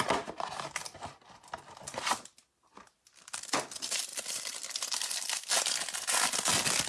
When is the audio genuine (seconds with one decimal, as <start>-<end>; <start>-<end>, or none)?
0.0-4.1; 5.5-6.9